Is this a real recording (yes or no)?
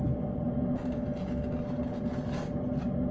yes